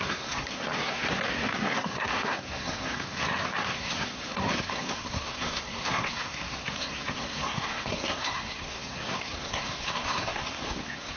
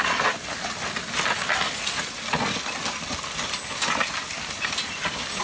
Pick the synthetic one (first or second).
first